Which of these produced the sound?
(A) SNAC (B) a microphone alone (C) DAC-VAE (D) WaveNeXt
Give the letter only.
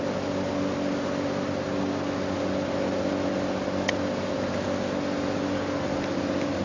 B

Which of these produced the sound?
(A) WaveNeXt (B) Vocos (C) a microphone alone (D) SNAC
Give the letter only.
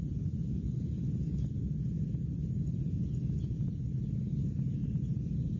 C